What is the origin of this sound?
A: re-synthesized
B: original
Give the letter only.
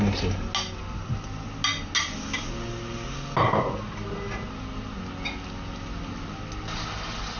B